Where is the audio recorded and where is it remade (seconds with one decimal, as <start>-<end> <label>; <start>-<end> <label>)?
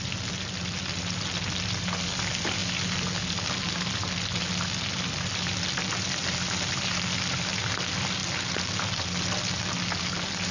0.0-10.5 recorded